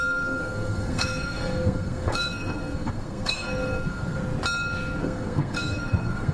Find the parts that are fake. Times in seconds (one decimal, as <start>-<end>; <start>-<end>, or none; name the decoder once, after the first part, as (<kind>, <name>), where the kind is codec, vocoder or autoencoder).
0.0-4.2 (codec, SNAC); 5.0-6.3